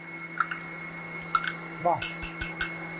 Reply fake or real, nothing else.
real